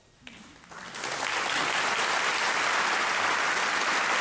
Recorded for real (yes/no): yes